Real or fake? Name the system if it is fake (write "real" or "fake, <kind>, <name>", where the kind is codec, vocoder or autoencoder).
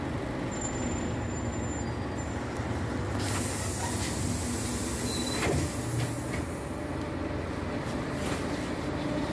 real